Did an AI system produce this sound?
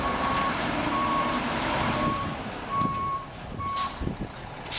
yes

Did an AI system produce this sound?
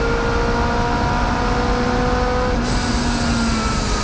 no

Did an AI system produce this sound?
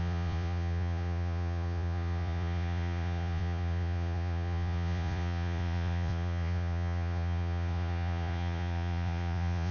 yes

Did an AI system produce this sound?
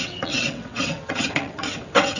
yes